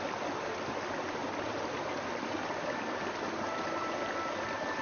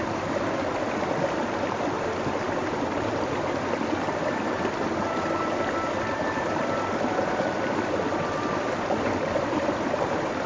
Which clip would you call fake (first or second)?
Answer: second